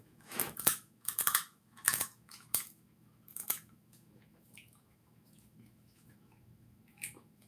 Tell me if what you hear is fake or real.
fake